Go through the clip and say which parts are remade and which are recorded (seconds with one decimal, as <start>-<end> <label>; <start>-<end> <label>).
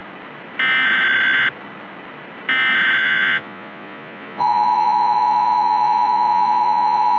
0.0-3.0 recorded; 3.0-7.2 remade